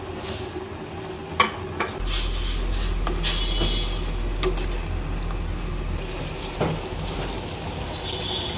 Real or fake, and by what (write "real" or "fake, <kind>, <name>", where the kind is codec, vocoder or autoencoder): real